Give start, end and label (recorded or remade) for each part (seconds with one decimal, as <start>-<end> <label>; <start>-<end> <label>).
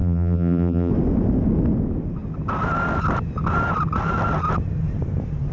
0.0-0.9 remade; 0.9-5.5 recorded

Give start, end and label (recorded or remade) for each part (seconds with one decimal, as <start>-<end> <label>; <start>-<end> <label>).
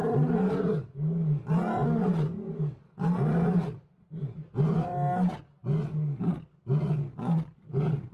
0.0-8.1 recorded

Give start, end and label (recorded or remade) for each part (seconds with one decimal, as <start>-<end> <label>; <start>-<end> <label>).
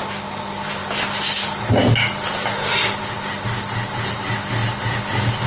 0.0-5.5 recorded